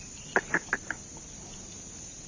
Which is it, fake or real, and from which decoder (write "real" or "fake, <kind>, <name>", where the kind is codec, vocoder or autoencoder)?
real